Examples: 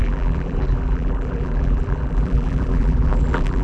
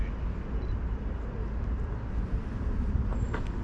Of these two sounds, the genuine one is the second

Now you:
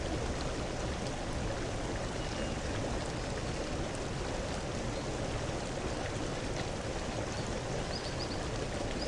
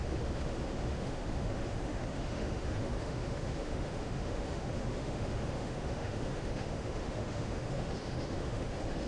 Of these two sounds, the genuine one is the first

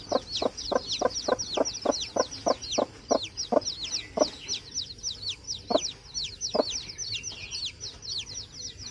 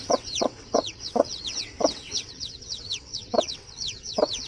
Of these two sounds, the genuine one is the first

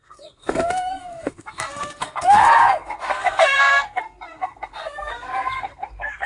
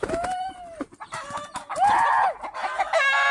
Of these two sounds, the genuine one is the second